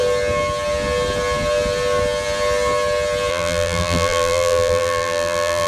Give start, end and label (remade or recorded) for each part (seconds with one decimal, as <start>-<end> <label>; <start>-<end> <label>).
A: 0.0-3.3 recorded; 3.3-5.7 remade